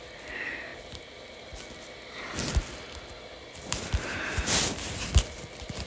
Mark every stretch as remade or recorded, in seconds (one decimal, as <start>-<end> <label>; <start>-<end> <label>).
0.0-5.9 recorded